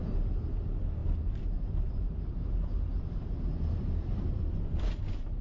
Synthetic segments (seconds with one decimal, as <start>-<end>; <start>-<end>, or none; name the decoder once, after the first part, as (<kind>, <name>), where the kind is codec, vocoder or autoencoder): none